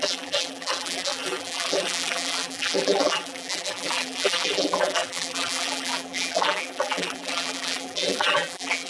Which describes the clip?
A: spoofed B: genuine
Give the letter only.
A